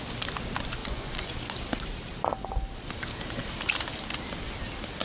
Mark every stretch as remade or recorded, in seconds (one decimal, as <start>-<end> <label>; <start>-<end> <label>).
0.0-0.8 recorded; 0.8-1.3 remade; 1.3-5.0 recorded